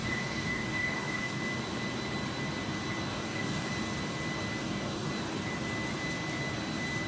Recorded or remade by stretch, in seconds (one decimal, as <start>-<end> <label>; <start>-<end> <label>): 0.0-1.4 remade; 1.4-3.1 recorded; 3.1-3.7 remade; 3.7-4.6 recorded; 4.6-5.1 remade; 5.1-7.1 recorded

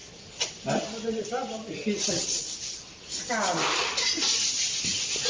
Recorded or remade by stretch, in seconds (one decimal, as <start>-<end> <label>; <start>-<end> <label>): 0.0-5.3 recorded

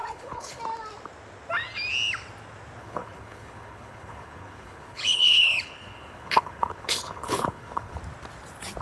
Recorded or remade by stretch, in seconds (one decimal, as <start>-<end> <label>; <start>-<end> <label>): 0.0-0.6 remade; 0.6-2.8 recorded; 2.8-8.0 remade; 8.0-8.8 recorded

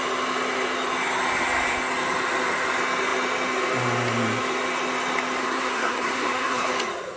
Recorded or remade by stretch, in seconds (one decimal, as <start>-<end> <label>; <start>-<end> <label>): 0.0-5.4 recorded; 5.4-6.7 remade; 6.7-7.2 recorded

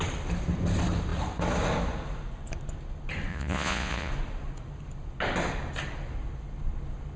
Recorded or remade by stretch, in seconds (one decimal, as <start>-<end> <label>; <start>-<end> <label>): 0.0-3.3 recorded; 3.3-4.1 remade; 4.1-7.2 recorded

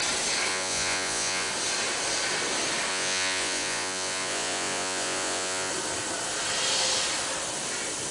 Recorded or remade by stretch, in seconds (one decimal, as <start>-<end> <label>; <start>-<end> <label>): 0.0-0.5 recorded; 0.5-1.5 remade; 1.5-2.9 recorded; 2.9-5.7 remade; 5.7-8.1 recorded